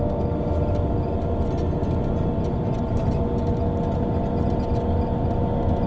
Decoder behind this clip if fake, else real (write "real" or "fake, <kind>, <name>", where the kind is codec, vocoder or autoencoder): real